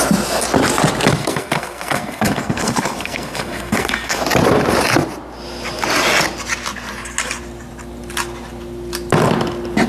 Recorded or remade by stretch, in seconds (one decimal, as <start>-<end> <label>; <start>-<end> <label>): 0.0-1.2 recorded; 1.2-4.2 remade; 4.2-9.9 recorded